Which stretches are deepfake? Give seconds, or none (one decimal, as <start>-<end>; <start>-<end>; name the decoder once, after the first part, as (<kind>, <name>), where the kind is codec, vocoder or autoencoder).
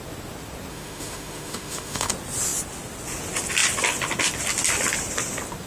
0.7-2.1 (autoencoder, DAC-VAE)